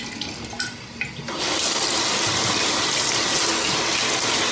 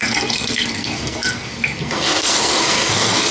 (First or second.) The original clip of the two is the first